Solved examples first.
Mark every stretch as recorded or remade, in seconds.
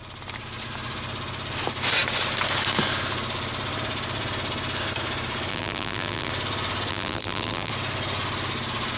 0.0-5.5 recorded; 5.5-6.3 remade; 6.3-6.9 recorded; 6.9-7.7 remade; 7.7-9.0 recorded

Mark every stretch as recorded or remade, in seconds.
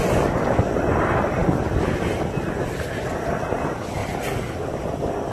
0.0-5.3 recorded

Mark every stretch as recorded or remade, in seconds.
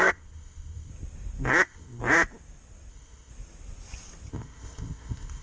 0.0-0.9 remade; 0.9-1.5 recorded; 1.5-2.0 remade; 2.0-2.9 recorded; 2.9-3.3 remade; 3.3-4.3 recorded; 4.3-5.4 remade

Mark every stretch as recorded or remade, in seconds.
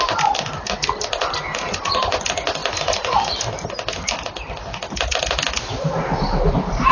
0.0-6.9 recorded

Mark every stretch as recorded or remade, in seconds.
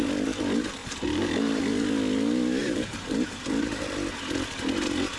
0.0-0.8 recorded; 0.8-1.6 remade; 1.6-2.6 recorded; 2.6-3.4 remade; 3.4-5.2 recorded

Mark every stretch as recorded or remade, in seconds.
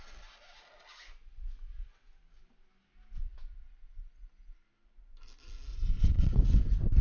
0.0-5.7 recorded; 5.7-7.0 remade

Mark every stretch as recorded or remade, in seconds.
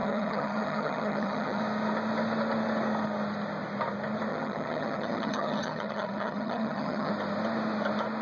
0.0-1.6 remade; 1.6-4.3 recorded; 4.3-7.1 remade; 7.1-8.2 recorded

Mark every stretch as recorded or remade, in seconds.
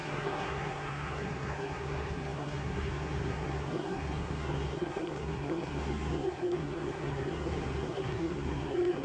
0.0-9.0 remade